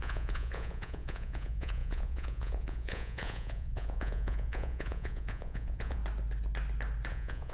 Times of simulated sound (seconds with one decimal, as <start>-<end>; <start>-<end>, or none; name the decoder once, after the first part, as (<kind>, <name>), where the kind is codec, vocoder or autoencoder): 0.0-6.0 (vocoder, Vocos); 7.1-7.5